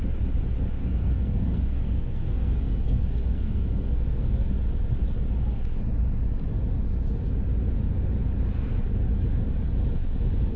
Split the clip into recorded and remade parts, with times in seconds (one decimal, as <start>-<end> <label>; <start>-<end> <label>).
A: 0.0-0.8 recorded; 0.8-4.5 remade; 4.5-10.6 recorded